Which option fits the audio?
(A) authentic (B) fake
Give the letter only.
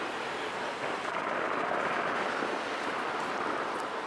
A